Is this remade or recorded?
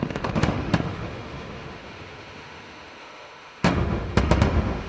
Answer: remade